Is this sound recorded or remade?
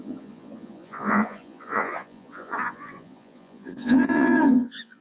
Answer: remade